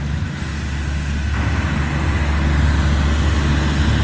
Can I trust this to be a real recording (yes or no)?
yes